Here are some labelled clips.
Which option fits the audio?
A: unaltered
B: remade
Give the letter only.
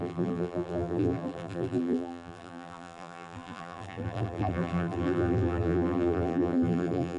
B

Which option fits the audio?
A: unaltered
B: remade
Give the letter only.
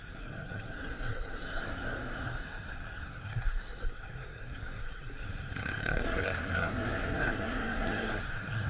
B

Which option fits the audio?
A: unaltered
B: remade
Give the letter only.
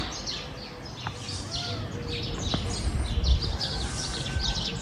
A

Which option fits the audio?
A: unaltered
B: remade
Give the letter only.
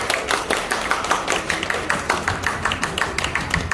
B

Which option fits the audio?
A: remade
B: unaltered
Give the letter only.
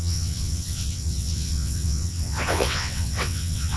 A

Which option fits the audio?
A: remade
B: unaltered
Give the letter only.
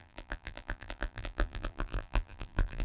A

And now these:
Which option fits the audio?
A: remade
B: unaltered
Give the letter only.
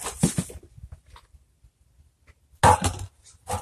B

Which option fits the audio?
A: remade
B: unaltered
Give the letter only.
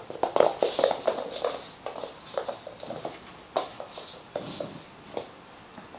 B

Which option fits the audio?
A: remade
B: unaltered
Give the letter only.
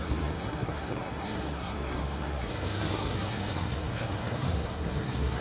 A